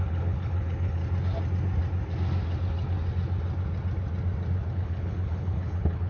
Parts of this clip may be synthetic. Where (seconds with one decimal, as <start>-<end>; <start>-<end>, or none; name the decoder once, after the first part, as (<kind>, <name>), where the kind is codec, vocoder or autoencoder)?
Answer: 0.0-1.0 (codec, HILCodec); 4.7-6.1